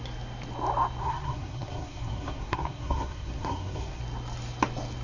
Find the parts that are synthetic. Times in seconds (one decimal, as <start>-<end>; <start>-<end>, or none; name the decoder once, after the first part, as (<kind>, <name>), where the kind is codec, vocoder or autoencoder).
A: 1.0-4.0 (codec, SNAC)